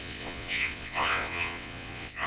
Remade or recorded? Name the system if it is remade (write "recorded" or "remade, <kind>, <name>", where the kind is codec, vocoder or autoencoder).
remade, vocoder, WaveNeXt